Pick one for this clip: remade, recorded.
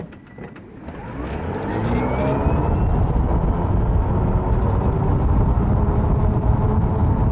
recorded